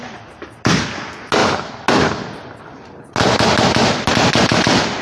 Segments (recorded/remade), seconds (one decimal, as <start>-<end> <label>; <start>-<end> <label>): 0.0-5.0 recorded